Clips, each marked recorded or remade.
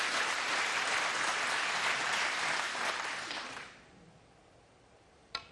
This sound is remade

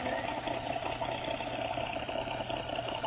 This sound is remade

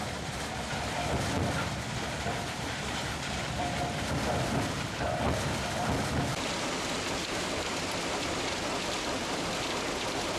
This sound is remade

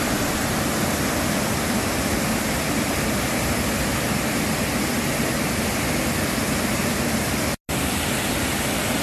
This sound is recorded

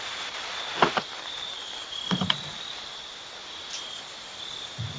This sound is recorded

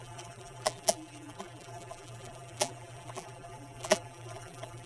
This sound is remade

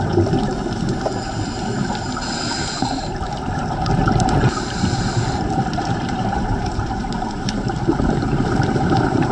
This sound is remade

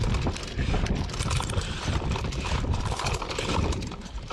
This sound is remade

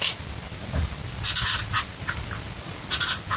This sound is recorded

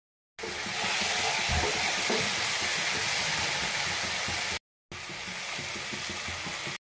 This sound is recorded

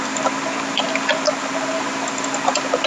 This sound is recorded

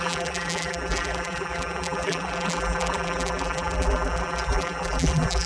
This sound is remade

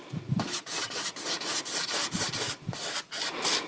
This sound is remade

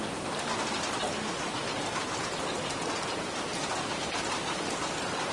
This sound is recorded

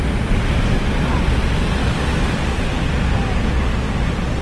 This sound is recorded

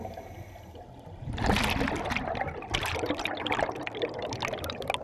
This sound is recorded